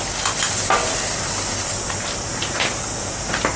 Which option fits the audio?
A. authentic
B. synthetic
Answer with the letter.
A